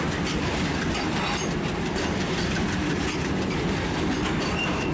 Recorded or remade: recorded